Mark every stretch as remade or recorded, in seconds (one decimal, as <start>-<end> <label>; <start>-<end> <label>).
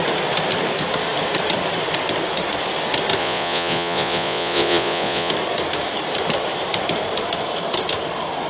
0.0-3.2 recorded; 3.2-5.3 remade; 5.3-8.5 recorded